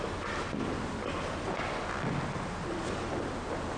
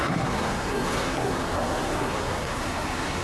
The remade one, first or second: second